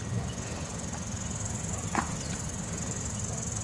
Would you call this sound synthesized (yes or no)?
no